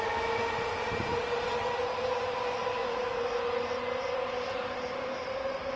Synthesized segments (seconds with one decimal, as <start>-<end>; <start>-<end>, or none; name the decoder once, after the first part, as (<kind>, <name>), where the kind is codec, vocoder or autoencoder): none